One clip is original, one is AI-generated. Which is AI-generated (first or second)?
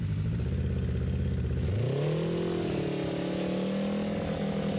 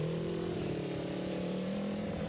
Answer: second